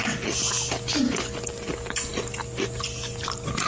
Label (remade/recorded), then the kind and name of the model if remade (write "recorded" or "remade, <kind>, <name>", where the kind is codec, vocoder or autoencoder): recorded